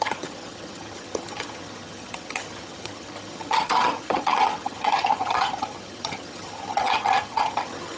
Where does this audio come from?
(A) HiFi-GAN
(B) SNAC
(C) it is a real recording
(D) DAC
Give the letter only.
A